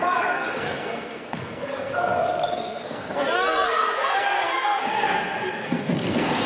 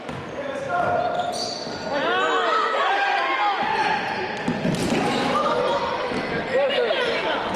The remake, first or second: first